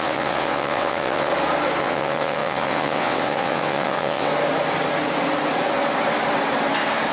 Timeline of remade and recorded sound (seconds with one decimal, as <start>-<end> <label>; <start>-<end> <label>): 0.0-1.3 remade; 1.3-1.8 recorded; 1.8-4.3 remade; 4.3-7.1 recorded